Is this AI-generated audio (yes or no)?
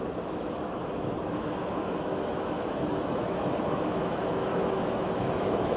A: yes